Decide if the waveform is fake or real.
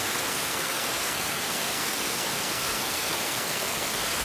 fake